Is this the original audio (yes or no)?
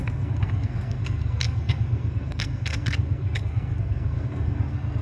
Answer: no